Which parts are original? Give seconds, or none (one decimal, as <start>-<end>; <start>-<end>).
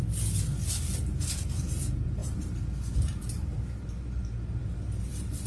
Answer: 0.0-1.2